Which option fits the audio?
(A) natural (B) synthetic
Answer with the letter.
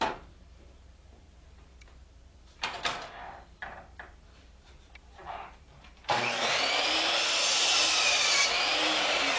B